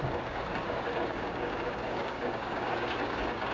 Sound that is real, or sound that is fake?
fake